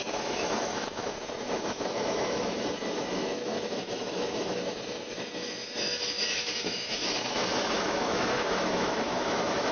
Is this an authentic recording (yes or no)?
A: no